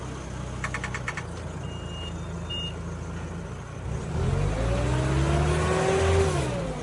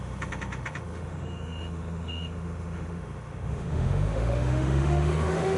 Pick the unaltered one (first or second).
first